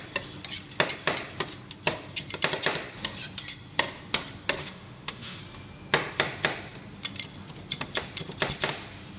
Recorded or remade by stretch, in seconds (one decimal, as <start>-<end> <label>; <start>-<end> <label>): 0.0-4.6 recorded; 4.6-5.4 remade; 5.4-9.2 recorded